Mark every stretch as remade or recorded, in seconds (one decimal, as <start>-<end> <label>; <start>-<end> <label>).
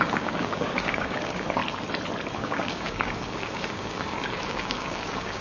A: 0.0-1.6 remade; 1.6-2.3 recorded; 2.3-5.4 remade